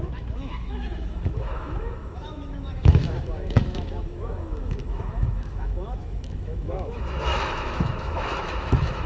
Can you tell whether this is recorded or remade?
remade